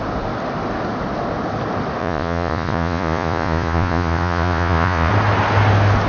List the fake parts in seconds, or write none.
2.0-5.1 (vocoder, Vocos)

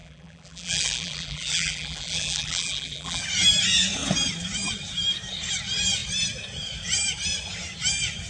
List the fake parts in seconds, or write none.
0.0-3.2 (vocoder, BigVGAN v2)